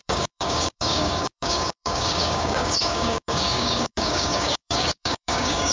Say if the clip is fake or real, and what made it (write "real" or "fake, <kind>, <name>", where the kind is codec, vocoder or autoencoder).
fake, codec, DAC